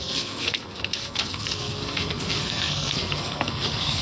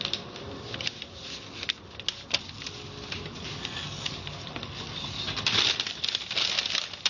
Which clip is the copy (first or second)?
first